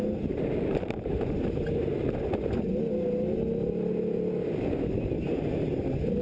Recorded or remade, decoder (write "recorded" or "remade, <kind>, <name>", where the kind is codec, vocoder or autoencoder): recorded